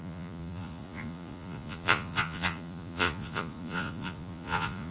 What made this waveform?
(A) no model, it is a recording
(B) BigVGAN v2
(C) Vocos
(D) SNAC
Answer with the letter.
C